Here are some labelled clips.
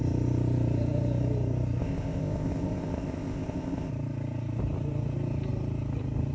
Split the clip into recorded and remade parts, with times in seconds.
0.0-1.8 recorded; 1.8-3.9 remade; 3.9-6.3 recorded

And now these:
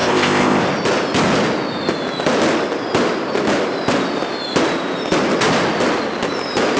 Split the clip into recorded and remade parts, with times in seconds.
0.0-0.6 remade; 0.6-6.8 recorded

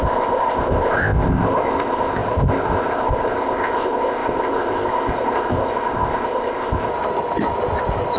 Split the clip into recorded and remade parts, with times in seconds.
0.0-6.9 remade; 6.9-8.2 recorded

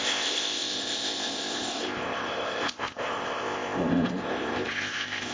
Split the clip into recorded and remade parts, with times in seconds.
0.0-5.3 remade